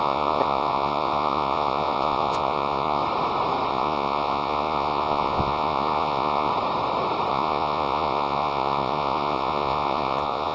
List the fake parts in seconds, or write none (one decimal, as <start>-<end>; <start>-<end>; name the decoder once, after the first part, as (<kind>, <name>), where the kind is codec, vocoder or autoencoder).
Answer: 0.0-3.0 (vocoder, Vocos); 3.7-6.5; 7.3-10.5